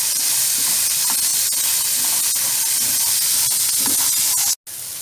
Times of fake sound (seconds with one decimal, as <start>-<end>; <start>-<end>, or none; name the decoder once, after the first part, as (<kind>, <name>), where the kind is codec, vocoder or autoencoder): none